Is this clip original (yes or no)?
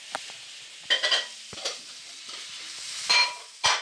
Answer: yes